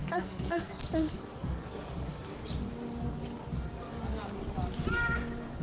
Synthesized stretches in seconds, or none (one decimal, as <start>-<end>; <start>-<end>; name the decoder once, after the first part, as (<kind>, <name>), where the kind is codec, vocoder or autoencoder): 0.0-0.8 (codec, SNAC)